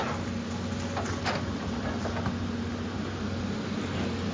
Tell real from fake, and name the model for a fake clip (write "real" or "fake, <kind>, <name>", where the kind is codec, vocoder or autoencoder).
real